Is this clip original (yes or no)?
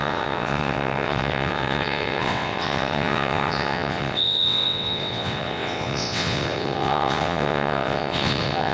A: no